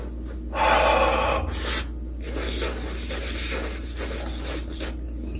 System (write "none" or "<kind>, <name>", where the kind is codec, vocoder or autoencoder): none